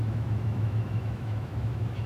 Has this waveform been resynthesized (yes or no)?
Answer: yes